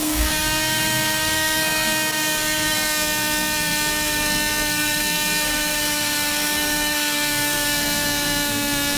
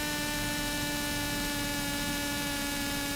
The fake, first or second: first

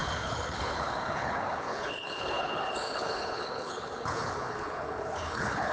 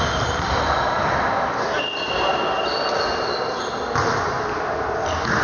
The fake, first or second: first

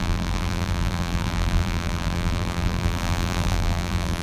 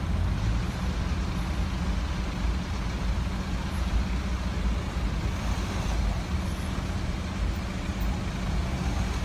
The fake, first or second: first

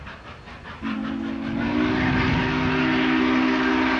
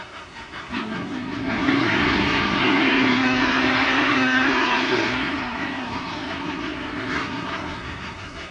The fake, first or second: second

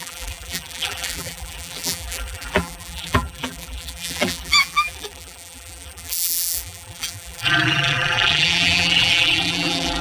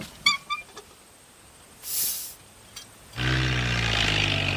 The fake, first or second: first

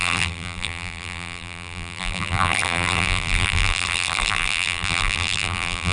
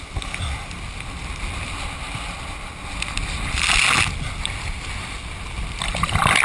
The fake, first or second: first